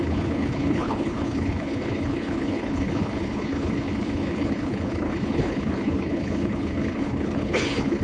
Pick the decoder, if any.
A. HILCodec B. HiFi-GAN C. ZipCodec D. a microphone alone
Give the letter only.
A